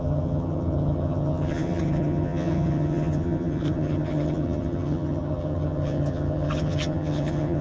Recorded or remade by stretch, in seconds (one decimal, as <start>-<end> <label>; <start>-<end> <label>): 0.0-7.6 remade